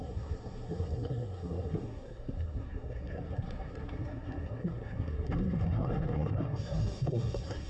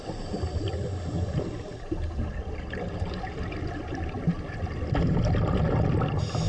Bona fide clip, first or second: second